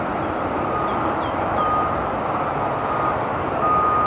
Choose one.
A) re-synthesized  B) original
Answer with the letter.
B